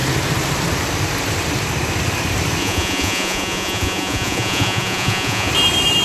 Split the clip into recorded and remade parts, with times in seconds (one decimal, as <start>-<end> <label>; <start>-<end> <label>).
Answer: 0.0-2.6 recorded; 2.6-5.5 remade; 5.5-6.0 recorded